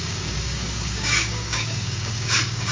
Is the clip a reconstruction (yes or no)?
yes